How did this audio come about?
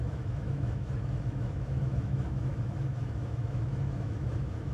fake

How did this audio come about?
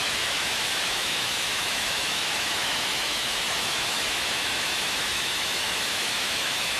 fake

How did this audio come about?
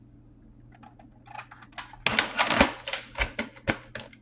real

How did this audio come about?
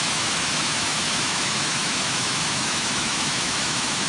fake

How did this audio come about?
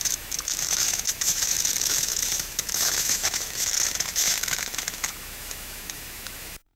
fake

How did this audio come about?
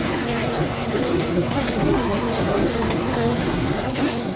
fake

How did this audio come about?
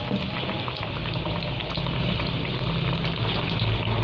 real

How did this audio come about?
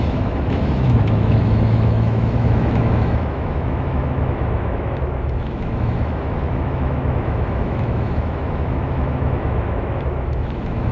fake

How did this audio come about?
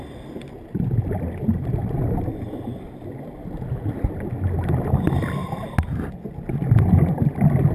real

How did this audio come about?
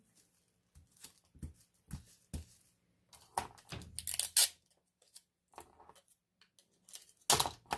real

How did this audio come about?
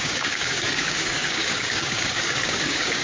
fake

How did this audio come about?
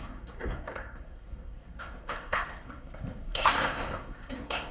fake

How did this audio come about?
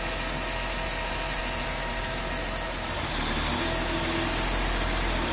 real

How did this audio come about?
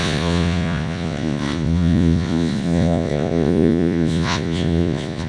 fake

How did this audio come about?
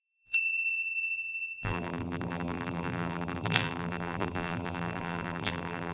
fake